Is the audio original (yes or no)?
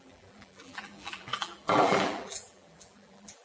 no